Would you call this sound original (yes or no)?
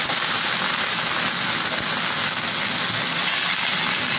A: yes